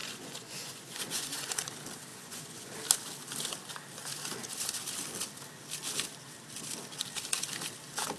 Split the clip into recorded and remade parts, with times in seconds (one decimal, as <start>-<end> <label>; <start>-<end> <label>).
0.0-1.7 remade; 1.7-2.1 recorded; 2.1-2.7 remade; 2.7-8.2 recorded